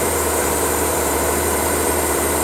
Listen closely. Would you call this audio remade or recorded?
remade